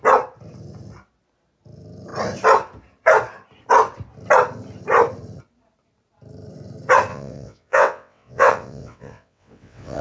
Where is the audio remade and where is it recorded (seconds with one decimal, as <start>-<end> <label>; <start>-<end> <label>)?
0.0-7.1 recorded; 7.1-10.0 remade